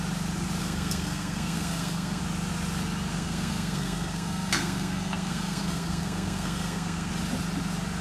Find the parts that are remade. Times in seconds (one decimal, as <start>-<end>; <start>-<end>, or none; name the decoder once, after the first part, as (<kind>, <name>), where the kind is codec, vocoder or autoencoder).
0.6-2.2 (codec, SNAC); 3.1-7.1